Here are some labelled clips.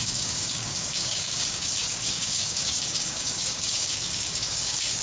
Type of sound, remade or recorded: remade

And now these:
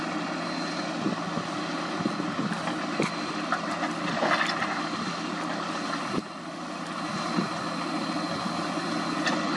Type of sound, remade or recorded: recorded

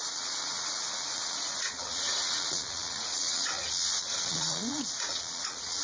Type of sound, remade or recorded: remade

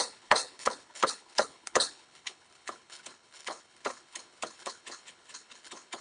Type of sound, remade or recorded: remade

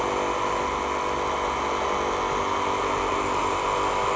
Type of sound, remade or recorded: recorded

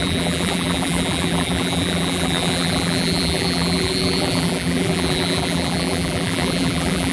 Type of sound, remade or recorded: remade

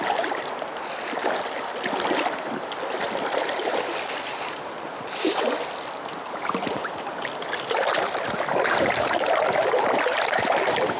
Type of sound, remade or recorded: recorded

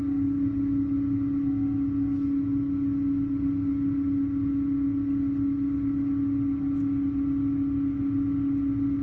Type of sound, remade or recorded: recorded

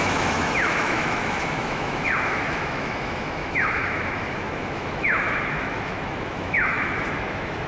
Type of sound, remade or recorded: remade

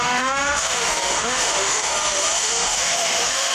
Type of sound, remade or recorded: remade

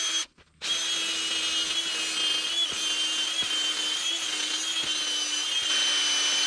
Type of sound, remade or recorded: recorded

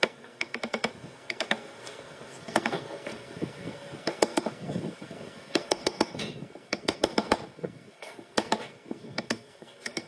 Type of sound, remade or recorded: remade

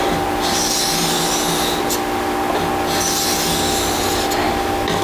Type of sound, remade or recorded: recorded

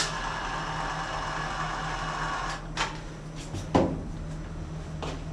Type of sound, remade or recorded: recorded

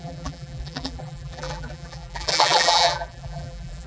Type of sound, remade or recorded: remade